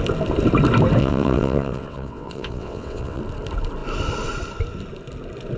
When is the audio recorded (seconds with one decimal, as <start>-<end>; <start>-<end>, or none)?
0.0-1.0; 3.2-5.6